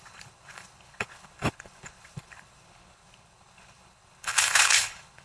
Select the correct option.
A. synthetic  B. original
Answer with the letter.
A